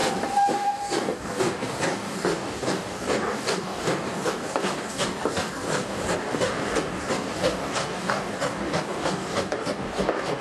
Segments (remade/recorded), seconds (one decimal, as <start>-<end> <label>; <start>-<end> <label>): 0.0-0.5 recorded; 0.5-10.4 remade